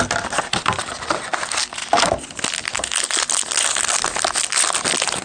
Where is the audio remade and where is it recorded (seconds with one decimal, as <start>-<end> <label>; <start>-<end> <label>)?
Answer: 0.0-5.2 recorded